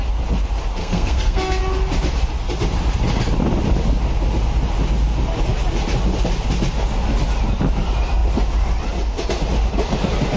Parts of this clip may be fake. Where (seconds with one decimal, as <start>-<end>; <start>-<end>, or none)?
0.8-1.6